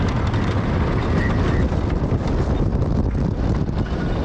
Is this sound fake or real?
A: real